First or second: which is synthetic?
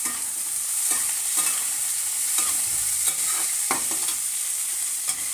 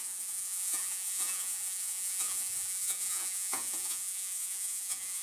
second